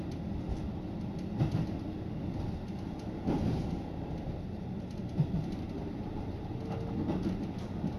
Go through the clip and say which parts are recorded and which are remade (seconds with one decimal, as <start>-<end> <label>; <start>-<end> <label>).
0.0-5.0 recorded; 5.0-6.5 remade; 6.5-8.0 recorded